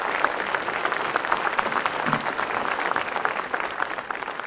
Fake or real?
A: fake